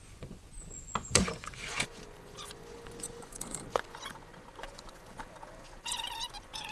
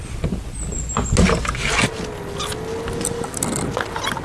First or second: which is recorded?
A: second